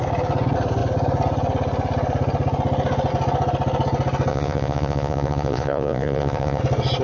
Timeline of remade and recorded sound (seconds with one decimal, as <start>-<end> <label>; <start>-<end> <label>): 0.0-4.3 recorded; 4.3-6.6 remade; 6.6-7.0 recorded